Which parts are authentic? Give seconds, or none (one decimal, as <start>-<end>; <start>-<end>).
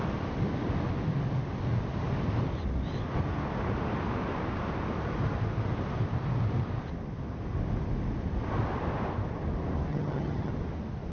0.0-9.9; 10.5-11.1